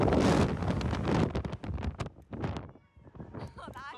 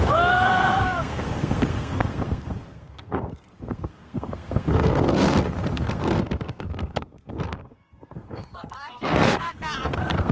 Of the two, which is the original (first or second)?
first